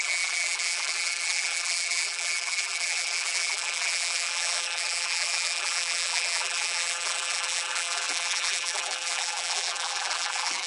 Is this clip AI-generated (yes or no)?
yes